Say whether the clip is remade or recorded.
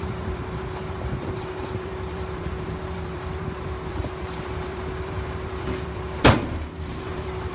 remade